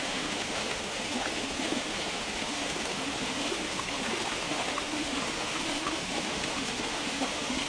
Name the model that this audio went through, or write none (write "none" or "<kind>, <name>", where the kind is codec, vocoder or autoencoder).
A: autoencoder, DAC-VAE